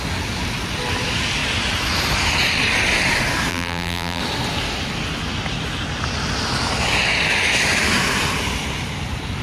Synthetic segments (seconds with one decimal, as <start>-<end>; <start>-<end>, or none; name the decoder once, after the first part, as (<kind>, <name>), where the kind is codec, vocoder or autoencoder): 3.5-4.2 (vocoder, BigVGAN v2)